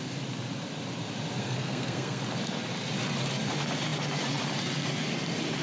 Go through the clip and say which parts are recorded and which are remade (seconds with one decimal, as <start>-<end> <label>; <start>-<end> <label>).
0.0-1.4 recorded; 1.4-2.2 remade; 2.2-5.6 recorded